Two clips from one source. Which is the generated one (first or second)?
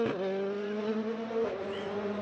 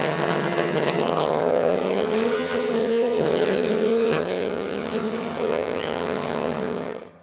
second